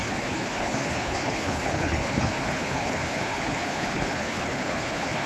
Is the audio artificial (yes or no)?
yes